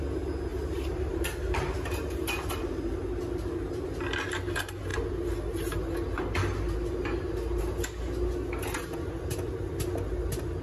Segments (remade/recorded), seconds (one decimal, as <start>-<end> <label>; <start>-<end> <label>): 0.0-0.5 recorded; 0.5-3.0 remade; 3.0-10.6 recorded